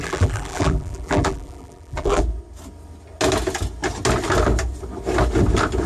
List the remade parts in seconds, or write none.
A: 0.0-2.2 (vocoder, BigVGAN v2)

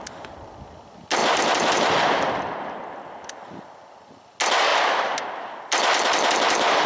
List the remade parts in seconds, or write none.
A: 1.2-1.9 (vocoder, BigVGAN v2)

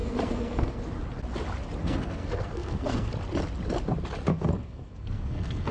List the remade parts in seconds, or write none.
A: 0.0-0.8 (codec, SNAC); 1.8-3.1; 4.3-5.7

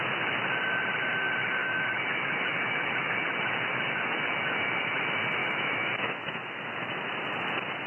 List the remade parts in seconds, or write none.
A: 1.6-5.0 (autoencoder, DAC-VAE); 5.4-7.0

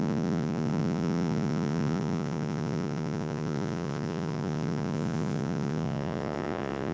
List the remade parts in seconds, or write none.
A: 0.0-6.9 (vocoder, Vocos)

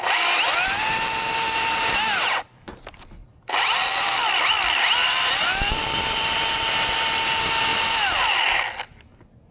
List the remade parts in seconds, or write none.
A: 3.2-6.5 (vocoder, BigVGAN v2); 7.7-8.6